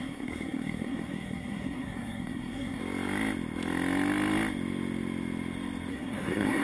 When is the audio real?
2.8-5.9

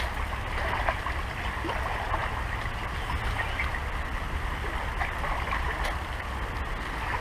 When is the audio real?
0.0-7.2